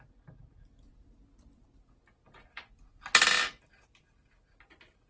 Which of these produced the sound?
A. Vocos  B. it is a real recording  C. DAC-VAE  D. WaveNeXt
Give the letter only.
B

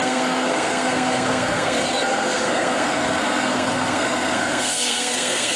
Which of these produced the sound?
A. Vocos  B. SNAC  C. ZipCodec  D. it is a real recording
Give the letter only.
B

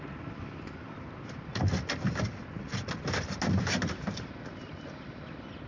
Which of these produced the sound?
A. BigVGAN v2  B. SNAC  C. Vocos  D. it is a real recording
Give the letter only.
D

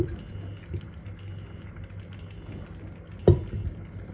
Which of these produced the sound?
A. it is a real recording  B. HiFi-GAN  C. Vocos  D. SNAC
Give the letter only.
A